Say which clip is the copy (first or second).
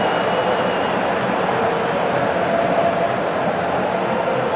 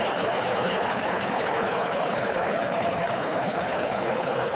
second